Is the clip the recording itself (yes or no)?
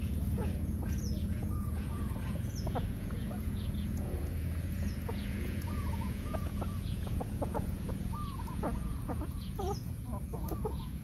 no